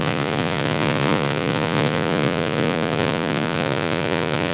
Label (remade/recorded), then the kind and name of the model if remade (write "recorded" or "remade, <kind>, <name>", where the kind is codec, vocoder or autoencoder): remade, vocoder, Vocos